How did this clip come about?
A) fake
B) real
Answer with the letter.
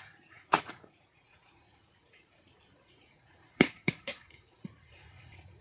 A